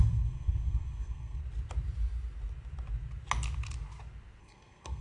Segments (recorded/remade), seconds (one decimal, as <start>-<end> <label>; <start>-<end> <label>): 0.0-1.4 remade; 1.4-4.4 recorded; 4.4-5.0 remade